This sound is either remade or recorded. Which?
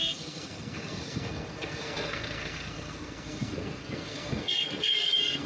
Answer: remade